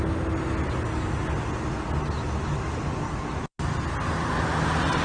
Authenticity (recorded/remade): recorded